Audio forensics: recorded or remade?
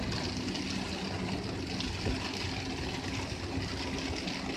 recorded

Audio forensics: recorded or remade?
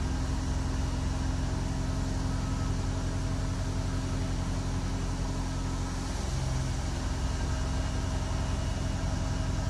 recorded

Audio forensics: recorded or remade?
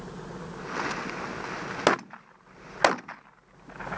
recorded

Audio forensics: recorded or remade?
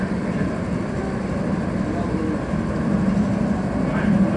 recorded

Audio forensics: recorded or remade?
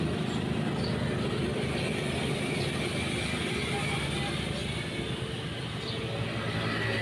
recorded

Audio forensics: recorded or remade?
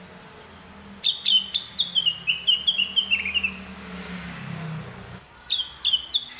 recorded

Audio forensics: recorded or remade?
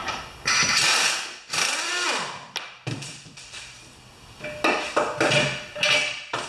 recorded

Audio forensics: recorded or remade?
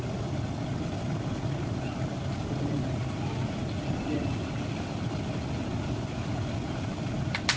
recorded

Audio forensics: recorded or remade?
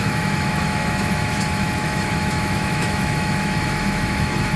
remade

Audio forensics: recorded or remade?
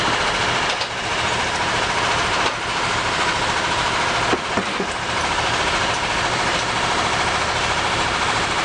recorded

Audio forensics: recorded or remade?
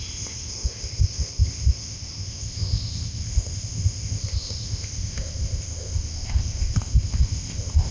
remade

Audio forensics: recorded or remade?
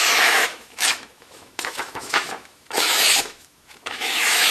remade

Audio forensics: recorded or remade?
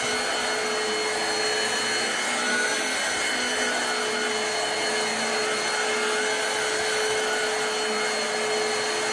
recorded